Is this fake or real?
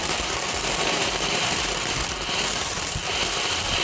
real